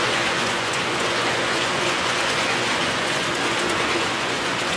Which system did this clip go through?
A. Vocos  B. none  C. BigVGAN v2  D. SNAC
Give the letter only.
A